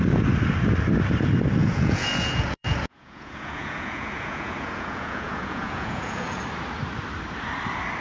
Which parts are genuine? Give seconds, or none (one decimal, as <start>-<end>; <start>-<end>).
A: 0.0-1.6; 6.4-8.0